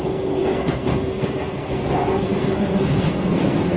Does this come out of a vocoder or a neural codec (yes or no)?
yes